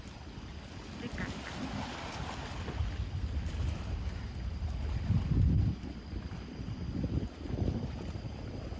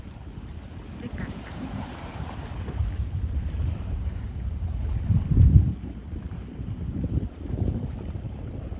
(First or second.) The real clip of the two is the first